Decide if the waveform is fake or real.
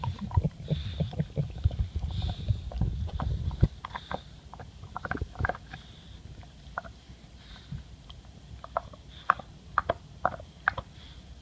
fake